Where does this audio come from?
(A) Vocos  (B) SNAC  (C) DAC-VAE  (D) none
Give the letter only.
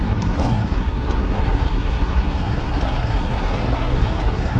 B